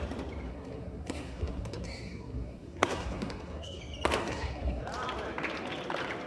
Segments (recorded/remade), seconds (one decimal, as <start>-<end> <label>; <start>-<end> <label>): 0.0-0.5 recorded; 0.5-3.8 remade; 3.8-4.2 recorded; 4.2-4.8 remade; 4.8-6.3 recorded